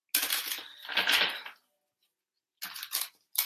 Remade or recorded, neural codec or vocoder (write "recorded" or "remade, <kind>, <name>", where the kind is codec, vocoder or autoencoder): recorded